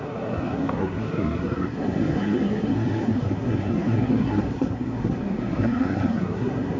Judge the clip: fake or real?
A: fake